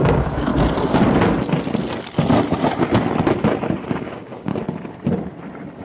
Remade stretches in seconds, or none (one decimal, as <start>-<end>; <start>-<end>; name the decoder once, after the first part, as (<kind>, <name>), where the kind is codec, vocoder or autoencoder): 0.0-0.5 (codec, DAC); 4.0-4.5